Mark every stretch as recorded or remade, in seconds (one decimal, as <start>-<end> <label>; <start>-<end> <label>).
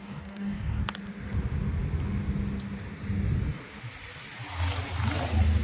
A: 0.0-0.8 remade; 0.8-5.6 recorded